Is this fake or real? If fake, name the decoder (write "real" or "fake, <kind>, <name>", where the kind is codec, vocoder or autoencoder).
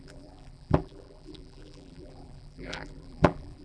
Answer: fake, vocoder, BigVGAN v2